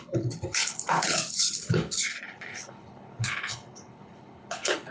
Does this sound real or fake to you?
fake